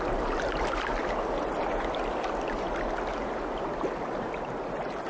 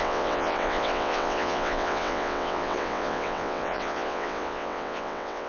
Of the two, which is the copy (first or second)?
second